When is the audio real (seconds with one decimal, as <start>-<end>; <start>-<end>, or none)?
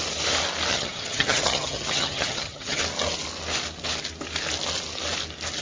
0.0-0.7; 2.8-5.6